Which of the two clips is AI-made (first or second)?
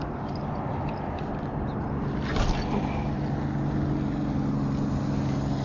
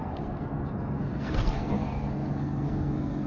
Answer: second